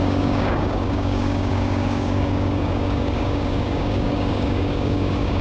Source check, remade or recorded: remade